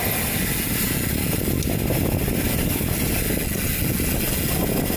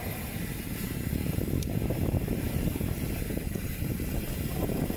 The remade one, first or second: second